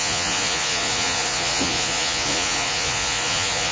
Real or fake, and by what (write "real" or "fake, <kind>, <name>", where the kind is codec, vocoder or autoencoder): fake, vocoder, Vocos